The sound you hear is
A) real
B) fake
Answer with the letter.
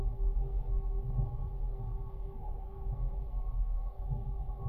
B